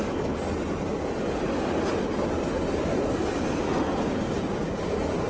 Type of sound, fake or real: real